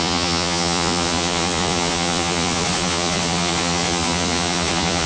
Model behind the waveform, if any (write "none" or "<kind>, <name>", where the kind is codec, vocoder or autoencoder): vocoder, Vocos